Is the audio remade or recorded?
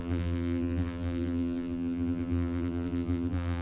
remade